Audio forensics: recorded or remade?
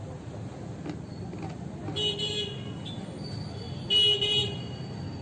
recorded